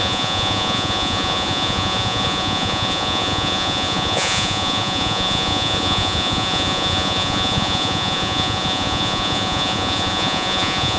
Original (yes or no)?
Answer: no